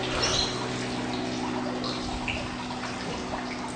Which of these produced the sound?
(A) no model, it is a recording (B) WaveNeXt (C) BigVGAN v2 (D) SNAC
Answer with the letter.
A